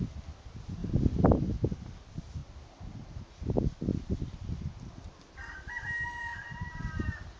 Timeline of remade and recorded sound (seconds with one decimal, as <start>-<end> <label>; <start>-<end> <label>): 0.0-6.3 recorded; 6.3-6.9 remade; 6.9-7.4 recorded